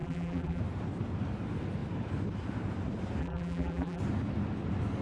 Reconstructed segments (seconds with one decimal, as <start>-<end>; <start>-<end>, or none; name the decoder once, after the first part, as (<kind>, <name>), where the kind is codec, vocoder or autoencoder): 0.0-0.6 (vocoder, BigVGAN v2); 3.2-4.0